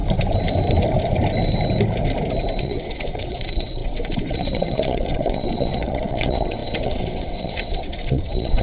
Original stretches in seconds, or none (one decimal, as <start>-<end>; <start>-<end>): 0.0-2.6